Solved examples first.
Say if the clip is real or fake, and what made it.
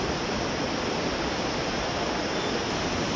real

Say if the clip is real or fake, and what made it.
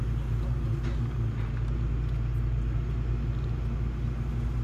real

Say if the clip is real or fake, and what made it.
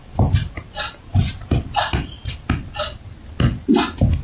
real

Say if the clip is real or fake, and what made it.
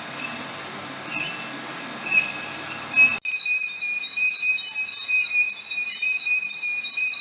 real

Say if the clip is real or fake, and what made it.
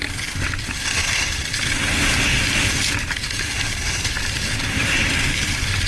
real